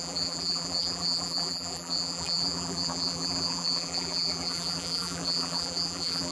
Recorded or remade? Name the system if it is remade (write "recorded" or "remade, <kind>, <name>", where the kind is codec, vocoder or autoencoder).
remade, vocoder, BigVGAN v2